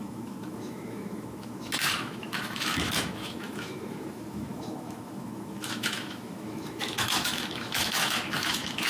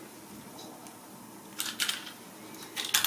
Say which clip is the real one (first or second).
second